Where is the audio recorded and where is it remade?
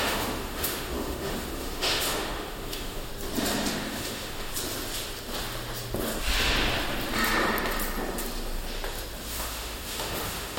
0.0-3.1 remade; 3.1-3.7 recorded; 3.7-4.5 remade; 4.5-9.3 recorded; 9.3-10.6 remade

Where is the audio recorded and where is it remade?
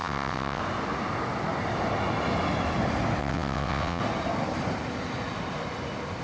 0.0-0.6 remade; 0.6-3.2 recorded; 3.2-4.0 remade; 4.0-6.2 recorded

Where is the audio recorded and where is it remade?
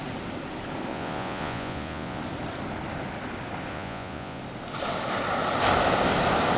0.0-0.9 recorded; 0.9-2.2 remade; 2.2-3.7 recorded; 3.7-4.4 remade; 4.4-6.6 recorded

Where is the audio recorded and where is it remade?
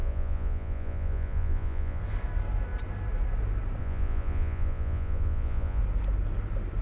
0.0-2.0 remade; 2.0-3.8 recorded; 3.8-5.8 remade; 5.8-6.8 recorded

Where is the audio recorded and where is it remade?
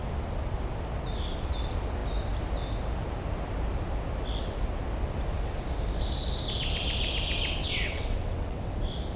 0.0-7.6 recorded; 7.6-8.7 remade; 8.7-9.2 recorded